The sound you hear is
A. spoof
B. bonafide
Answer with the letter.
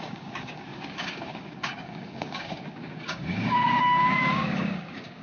A